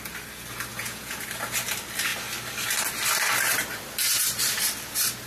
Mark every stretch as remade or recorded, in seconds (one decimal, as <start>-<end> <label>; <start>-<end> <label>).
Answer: 0.0-0.7 recorded; 0.7-1.2 remade; 1.2-5.3 recorded